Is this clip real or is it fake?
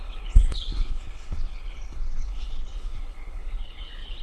fake